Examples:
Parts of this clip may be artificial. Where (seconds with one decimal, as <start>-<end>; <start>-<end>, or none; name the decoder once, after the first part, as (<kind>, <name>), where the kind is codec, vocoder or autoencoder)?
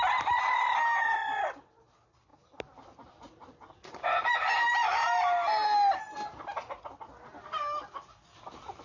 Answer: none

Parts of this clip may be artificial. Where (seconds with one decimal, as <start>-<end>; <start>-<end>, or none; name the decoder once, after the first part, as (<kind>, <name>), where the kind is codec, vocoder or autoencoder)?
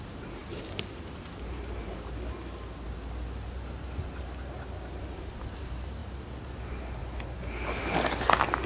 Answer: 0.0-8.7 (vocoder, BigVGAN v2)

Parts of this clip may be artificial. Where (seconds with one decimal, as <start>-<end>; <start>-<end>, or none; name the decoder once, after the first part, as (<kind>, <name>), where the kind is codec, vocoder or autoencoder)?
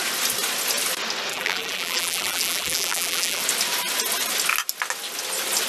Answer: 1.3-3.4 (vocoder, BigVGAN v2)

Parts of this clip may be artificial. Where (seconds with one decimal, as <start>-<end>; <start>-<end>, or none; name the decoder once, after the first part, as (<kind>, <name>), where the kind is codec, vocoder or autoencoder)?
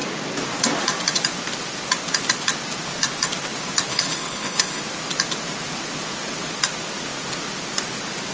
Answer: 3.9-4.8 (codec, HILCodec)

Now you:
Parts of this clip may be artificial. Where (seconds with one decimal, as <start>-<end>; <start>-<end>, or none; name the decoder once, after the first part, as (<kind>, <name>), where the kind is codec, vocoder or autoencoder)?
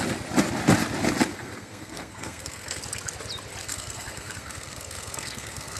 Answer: 1.3-2.8 (codec, SNAC); 3.6-5.8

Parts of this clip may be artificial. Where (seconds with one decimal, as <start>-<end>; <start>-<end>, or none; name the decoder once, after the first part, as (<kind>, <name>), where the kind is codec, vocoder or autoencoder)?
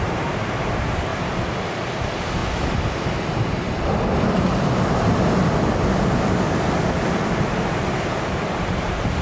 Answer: 0.0-1.1 (vocoder, BigVGAN v2); 2.0-2.4; 7.3-9.2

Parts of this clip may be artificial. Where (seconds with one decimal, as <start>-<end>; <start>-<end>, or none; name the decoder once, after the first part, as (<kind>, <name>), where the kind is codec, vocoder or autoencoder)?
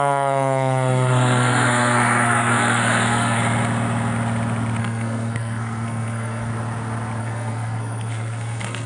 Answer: 0.0-3.4 (codec, SNAC); 4.8-6.5; 7.2-8.9